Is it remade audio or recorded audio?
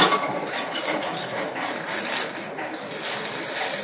recorded